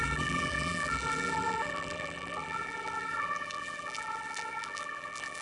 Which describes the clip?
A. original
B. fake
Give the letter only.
B